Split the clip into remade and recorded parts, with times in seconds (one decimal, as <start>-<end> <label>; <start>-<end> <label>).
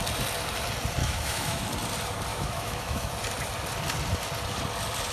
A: 0.0-1.0 recorded; 1.0-1.6 remade; 1.6-2.3 recorded; 2.3-3.1 remade; 3.1-5.1 recorded